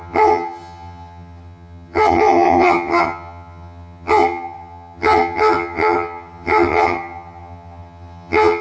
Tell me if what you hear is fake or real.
fake